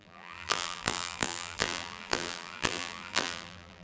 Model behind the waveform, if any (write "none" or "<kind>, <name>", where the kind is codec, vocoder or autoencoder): vocoder, BigVGAN v2